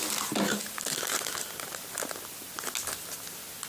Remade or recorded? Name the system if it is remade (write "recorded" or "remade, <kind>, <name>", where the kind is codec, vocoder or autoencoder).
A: recorded